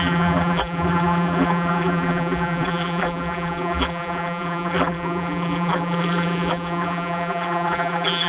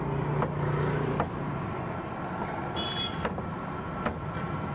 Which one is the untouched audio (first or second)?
second